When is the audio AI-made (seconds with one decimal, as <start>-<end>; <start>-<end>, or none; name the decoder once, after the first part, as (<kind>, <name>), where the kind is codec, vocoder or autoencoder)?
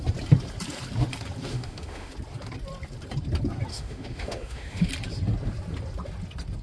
1.5-2.1 (autoencoder, DAC-VAE); 3.7-4.9